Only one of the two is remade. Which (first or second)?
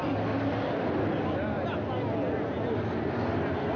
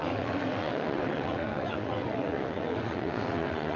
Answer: second